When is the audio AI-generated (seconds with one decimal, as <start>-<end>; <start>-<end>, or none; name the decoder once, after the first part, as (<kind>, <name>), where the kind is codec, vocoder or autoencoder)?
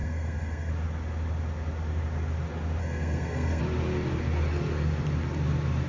0.0-0.7 (codec, SNAC); 2.8-3.6